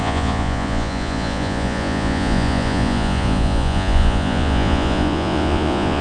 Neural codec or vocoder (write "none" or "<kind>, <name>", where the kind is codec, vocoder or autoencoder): vocoder, Vocos